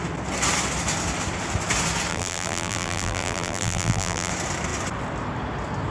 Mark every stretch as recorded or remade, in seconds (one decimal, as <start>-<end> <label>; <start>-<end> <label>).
0.0-2.1 recorded; 2.1-4.3 remade; 4.3-5.9 recorded